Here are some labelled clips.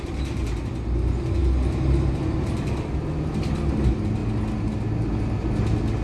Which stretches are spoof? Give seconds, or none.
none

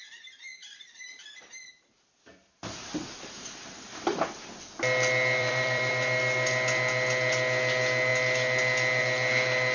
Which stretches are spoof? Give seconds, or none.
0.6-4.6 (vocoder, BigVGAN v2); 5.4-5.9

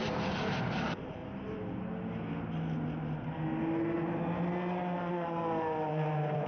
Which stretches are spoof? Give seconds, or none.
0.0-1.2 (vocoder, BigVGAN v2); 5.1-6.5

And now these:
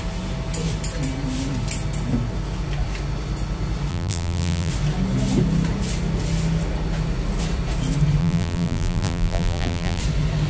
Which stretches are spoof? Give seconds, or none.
3.9-4.7 (vocoder, BigVGAN v2); 8.2-10.0

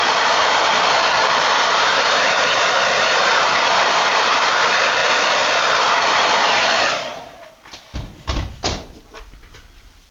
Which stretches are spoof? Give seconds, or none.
1.4-2.4 (vocoder, BigVGAN v2)